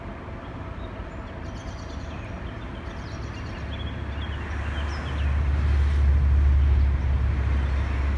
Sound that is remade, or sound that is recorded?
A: recorded